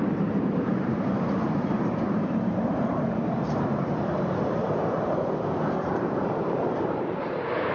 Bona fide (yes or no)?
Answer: no